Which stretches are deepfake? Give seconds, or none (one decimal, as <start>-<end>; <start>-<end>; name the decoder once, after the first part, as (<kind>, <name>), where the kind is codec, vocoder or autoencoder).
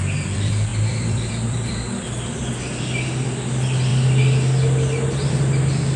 0.0-3.9 (vocoder, BigVGAN v2); 5.3-6.0